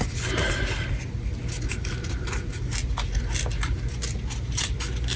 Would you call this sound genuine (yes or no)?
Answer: yes